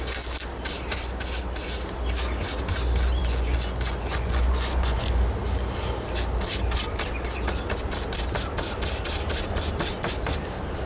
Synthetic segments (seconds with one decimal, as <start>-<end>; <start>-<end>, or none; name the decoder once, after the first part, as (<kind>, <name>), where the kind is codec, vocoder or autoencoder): 3.2-5.2 (vocoder, Vocos)